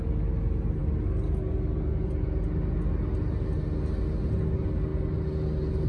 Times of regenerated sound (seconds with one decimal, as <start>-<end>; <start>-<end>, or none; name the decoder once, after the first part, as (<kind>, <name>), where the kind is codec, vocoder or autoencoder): none